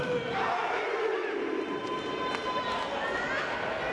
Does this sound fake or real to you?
real